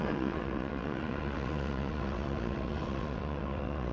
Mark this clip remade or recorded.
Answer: remade